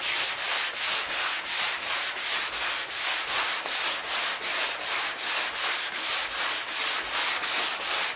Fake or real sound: real